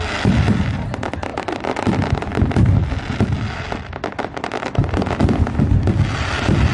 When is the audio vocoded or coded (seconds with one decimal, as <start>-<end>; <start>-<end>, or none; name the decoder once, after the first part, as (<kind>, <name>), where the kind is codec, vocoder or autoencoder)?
none